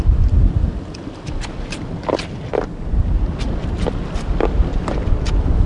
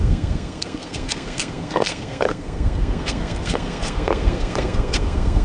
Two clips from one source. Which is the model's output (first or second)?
second